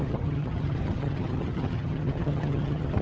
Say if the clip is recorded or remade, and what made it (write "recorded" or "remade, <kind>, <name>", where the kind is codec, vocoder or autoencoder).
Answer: remade, vocoder, HiFi-GAN